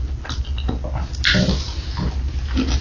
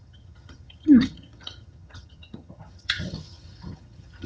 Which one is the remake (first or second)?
second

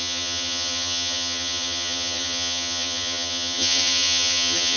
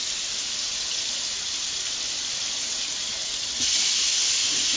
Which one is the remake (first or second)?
first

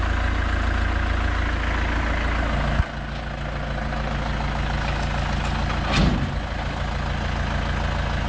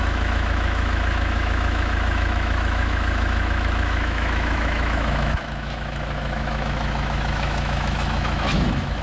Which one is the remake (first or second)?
second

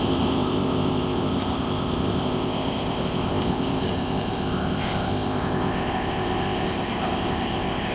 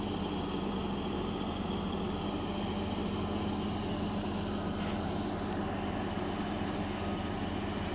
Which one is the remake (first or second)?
first